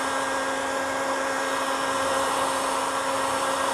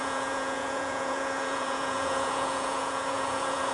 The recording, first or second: first